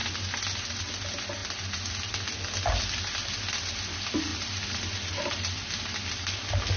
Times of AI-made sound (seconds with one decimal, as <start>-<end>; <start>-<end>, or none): none